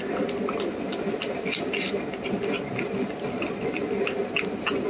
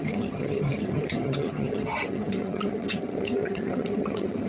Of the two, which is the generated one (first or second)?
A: second